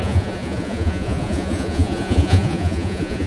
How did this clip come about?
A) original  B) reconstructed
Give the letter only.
B